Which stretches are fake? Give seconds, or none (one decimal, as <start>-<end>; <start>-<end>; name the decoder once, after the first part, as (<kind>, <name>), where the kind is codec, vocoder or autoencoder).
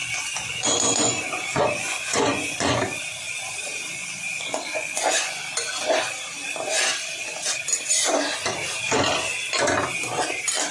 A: 0.0-2.8 (vocoder, Vocos); 4.0-5.4